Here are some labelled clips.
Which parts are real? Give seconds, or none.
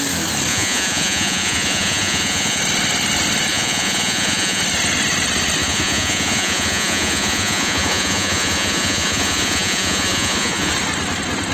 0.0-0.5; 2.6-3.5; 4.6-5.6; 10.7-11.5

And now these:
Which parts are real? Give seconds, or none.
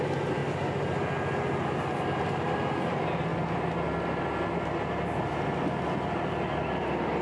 0.0-7.2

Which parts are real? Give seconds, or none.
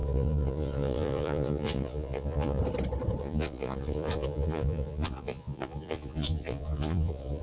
2.6-3.2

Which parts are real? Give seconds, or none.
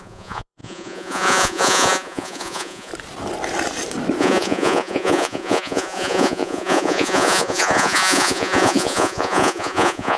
2.9-4.2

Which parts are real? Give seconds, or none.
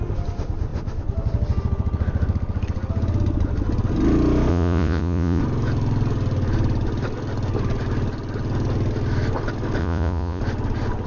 0.0-4.5; 5.4-9.8; 10.4-11.1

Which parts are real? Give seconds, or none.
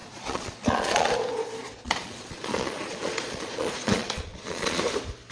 1.1-1.6; 4.8-5.3